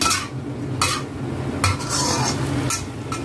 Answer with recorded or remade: recorded